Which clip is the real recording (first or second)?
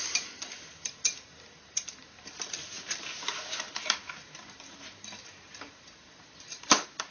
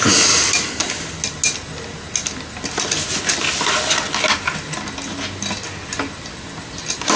second